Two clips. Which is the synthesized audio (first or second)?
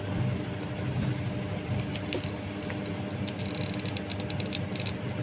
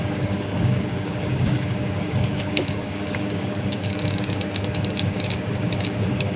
second